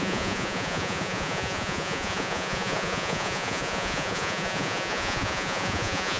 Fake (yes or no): yes